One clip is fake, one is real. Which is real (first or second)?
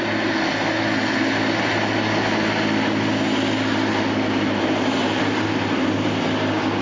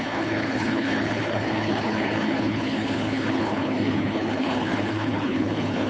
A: first